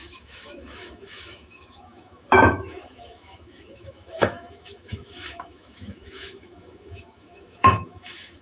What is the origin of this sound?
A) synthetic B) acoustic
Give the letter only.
A